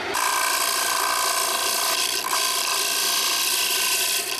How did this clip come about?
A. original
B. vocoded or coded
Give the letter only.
A